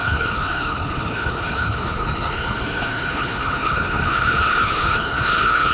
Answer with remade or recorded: remade